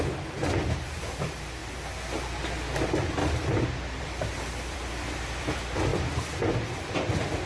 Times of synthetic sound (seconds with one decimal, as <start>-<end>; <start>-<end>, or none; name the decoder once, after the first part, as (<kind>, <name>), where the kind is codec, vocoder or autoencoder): 0.0-1.6 (vocoder, BigVGAN v2); 2.4-3.2; 4.0-7.5